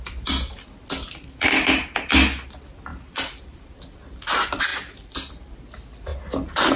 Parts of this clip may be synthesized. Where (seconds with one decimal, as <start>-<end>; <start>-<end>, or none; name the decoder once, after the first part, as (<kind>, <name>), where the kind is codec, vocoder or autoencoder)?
none